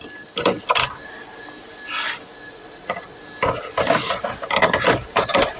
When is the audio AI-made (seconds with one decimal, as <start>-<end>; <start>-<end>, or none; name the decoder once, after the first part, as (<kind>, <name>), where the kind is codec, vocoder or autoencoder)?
2.3-3.2 (vocoder, Vocos)